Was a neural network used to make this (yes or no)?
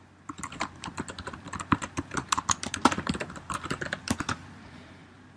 yes